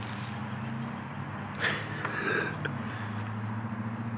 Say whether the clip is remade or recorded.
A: recorded